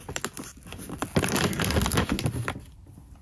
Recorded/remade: recorded